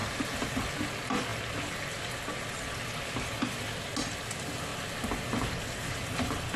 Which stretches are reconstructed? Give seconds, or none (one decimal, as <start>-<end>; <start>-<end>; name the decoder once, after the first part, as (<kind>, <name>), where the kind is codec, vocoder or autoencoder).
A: none